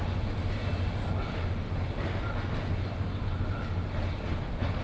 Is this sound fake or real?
real